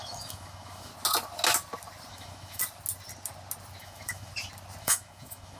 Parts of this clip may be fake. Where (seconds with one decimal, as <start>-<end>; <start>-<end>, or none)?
0.0-0.9; 2.1-2.6; 3.8-4.3; 4.8-5.6